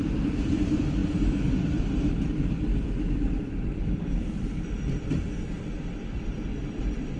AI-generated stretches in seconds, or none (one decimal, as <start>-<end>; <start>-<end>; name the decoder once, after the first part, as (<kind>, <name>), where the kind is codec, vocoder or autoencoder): 0.0-7.2 (vocoder, BigVGAN v2)